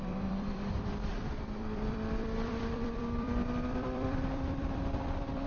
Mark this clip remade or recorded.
remade